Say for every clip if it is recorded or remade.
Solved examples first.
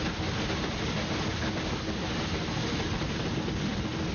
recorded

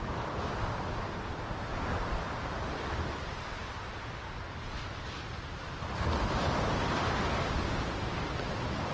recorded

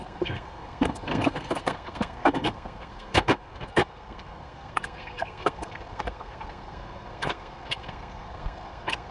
remade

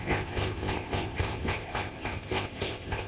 remade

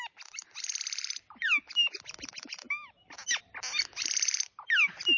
recorded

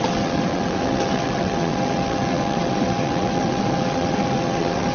remade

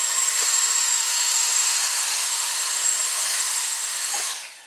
remade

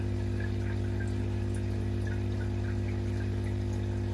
recorded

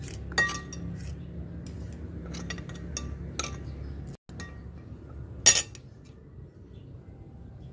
recorded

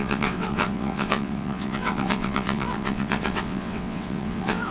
remade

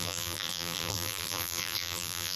remade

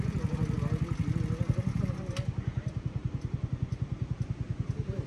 recorded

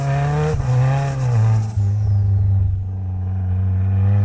recorded